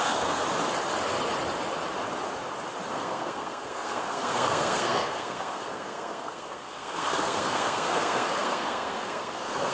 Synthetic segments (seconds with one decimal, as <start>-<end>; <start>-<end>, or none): 0.0-0.4; 2.9-9.7